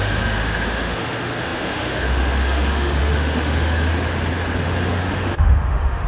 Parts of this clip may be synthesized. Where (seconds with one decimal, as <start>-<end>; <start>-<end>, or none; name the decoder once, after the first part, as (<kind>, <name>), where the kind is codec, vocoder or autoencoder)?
0.0-3.9 (autoencoder, DAC-VAE); 4.6-6.1